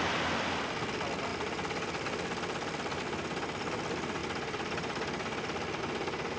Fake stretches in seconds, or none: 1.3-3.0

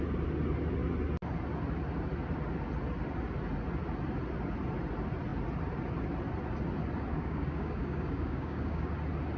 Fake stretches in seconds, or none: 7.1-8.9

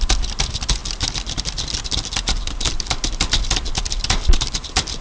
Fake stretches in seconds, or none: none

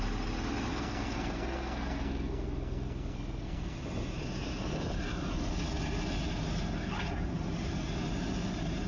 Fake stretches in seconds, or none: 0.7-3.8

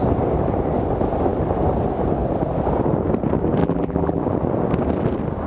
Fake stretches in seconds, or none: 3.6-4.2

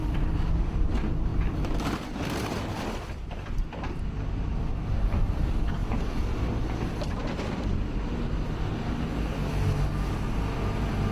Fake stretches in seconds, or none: none

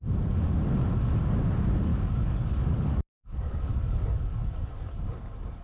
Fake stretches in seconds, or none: 1.9-4.7